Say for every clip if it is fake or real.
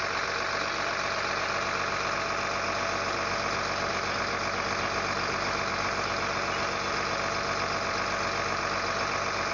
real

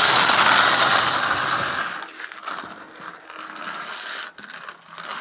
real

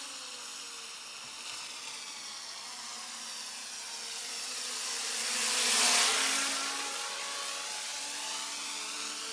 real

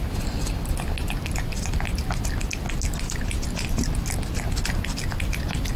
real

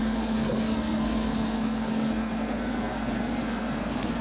fake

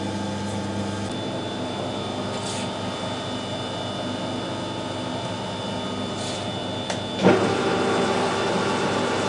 real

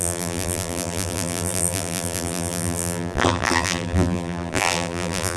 fake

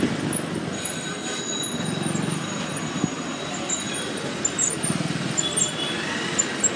real